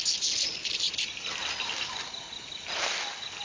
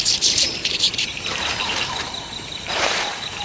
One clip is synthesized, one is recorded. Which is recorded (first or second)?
first